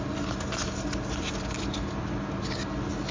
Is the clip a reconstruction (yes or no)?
no